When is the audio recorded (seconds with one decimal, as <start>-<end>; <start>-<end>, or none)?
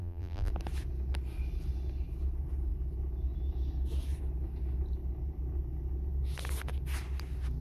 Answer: 0.5-7.6